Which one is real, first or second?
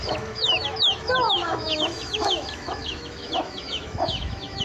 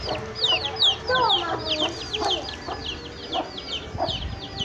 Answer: second